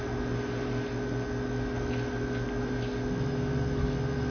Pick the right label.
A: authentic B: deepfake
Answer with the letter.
A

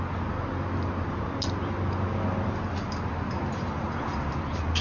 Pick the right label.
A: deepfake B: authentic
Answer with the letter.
B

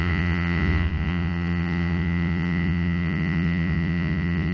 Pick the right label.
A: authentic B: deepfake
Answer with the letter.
B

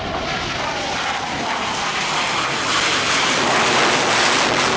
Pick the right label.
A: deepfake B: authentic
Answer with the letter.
B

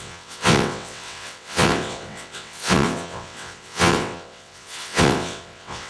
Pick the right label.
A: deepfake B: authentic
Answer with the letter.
A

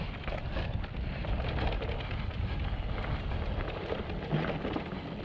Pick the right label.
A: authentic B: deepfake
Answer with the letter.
A